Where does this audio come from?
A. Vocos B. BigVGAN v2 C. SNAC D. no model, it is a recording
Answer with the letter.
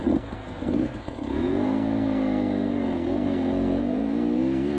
C